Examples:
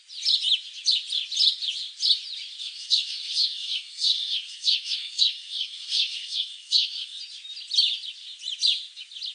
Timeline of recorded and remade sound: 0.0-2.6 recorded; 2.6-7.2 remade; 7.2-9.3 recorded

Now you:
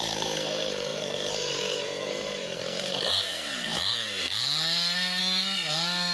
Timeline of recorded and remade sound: 0.0-6.1 remade

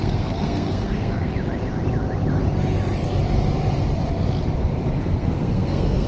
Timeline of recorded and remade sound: 0.0-1.3 remade; 1.3-5.0 recorded; 5.0-6.1 remade

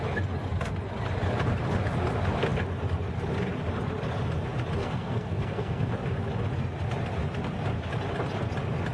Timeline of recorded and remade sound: 0.0-4.8 recorded; 4.8-5.9 remade; 5.9-8.9 recorded

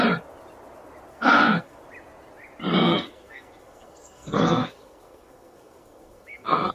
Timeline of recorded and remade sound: 0.0-1.1 recorded; 1.1-1.8 remade; 1.8-2.8 recorded; 2.8-6.7 remade